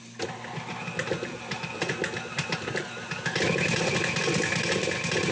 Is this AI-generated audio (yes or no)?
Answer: no